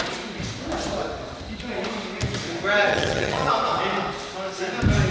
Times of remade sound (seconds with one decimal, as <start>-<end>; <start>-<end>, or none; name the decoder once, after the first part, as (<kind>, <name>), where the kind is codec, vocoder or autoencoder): 2.9-3.5 (vocoder, HiFi-GAN)